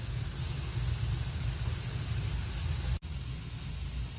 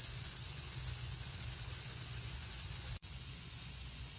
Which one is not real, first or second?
second